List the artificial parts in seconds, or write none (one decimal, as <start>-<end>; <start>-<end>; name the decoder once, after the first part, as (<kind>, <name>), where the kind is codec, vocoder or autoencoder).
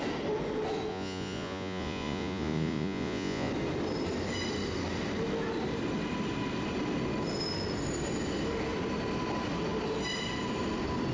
0.9-3.5 (vocoder, Vocos)